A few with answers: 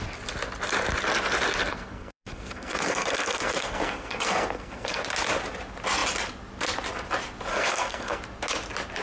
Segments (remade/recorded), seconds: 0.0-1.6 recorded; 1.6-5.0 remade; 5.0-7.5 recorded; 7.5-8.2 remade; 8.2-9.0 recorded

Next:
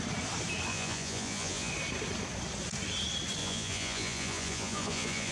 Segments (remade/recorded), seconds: 0.0-0.7 recorded; 0.7-1.7 remade; 1.7-3.4 recorded; 3.4-5.3 remade

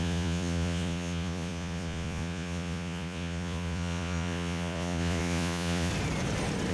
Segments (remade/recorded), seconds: 0.0-5.9 remade; 5.9-6.7 recorded

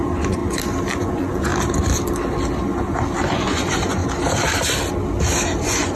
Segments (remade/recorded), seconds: 0.0-0.4 remade; 0.4-1.0 recorded; 1.0-1.5 remade; 1.5-3.3 recorded; 3.3-4.0 remade; 4.0-5.6 recorded; 5.6-6.0 remade

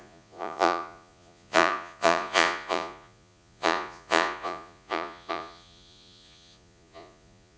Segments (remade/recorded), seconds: 0.0-7.6 remade